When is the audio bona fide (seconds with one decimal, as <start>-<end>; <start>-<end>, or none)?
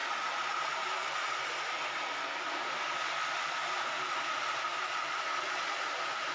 1.4-3.2; 3.8-6.3